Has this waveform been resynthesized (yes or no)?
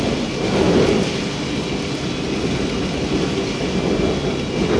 no